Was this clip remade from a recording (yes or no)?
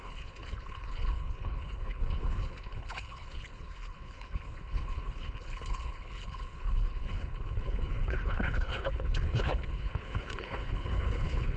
yes